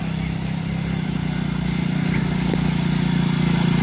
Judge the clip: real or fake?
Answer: real